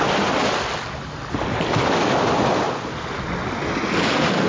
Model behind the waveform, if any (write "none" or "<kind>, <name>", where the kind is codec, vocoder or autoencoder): none